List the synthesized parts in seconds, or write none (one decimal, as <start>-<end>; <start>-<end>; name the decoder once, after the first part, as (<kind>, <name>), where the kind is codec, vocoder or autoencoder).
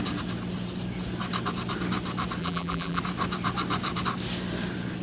2.4-3.0 (vocoder, BigVGAN v2)